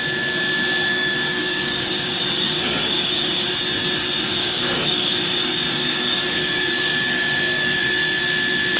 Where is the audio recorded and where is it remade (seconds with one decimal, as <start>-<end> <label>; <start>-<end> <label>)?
0.0-0.9 recorded; 0.9-3.5 remade; 3.5-4.3 recorded; 4.3-8.2 remade; 8.2-8.8 recorded